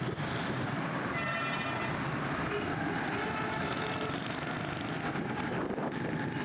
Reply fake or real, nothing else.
real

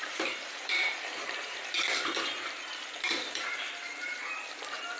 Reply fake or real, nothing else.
fake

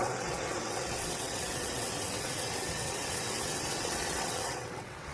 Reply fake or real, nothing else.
fake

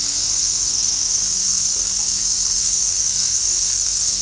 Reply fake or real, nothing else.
fake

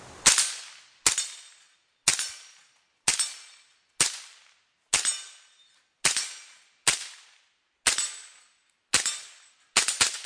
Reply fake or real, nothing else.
real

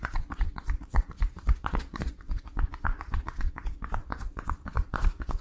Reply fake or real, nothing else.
fake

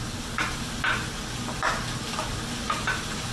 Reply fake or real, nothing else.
real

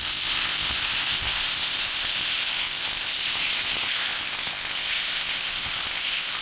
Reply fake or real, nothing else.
fake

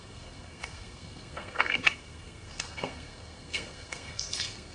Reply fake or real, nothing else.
fake